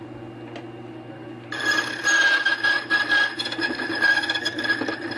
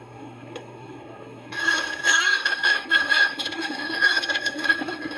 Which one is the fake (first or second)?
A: second